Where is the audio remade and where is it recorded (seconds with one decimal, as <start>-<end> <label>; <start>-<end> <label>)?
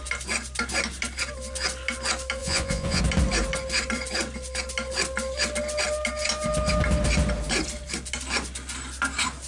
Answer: 0.0-2.4 recorded; 2.4-3.0 remade; 3.0-9.5 recorded